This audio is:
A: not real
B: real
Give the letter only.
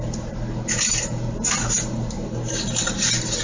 B